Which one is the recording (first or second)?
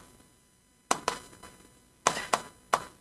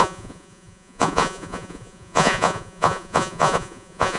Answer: first